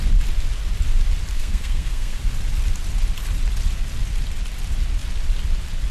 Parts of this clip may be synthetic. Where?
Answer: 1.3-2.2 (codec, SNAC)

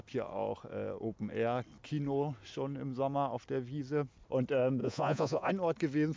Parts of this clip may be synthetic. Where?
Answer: 4.8-5.5 (vocoder, Vocos)

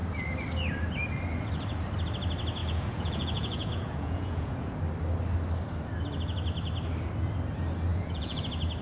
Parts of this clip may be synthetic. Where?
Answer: 2.6-4.8 (vocoder, Vocos); 7.9-8.4

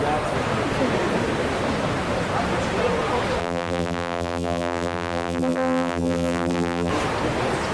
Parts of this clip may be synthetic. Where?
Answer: 3.4-6.9 (vocoder, BigVGAN v2)

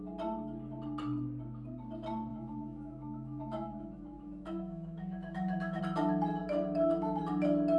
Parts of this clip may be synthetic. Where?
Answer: 2.3-5.8 (autoencoder, DAC-VAE); 6.4-7.2

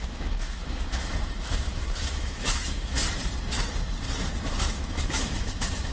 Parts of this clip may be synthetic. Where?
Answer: 0.0-3.0 (autoencoder, DAC-VAE); 4.4-5.9

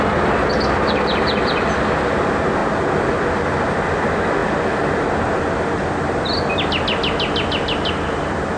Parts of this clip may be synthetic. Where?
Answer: none